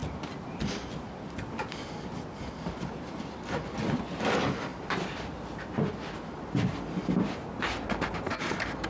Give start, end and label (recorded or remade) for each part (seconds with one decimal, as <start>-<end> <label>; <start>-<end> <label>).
0.0-0.7 remade; 0.7-8.9 recorded

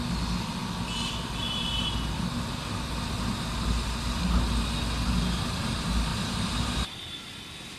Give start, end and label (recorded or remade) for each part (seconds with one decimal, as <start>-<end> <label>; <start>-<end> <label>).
0.0-6.1 recorded; 6.1-6.9 remade; 6.9-7.8 recorded

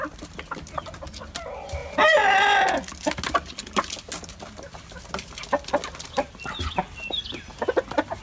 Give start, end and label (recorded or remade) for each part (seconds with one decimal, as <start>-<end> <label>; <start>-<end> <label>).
0.0-8.2 recorded